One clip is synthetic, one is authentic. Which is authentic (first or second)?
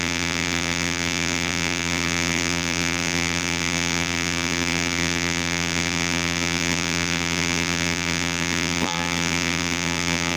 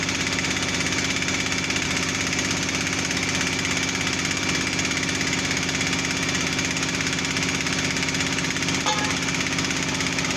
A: second